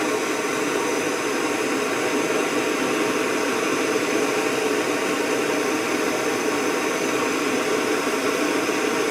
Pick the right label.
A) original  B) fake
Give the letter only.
B